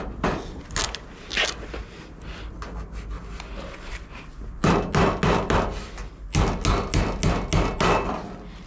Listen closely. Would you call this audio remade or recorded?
recorded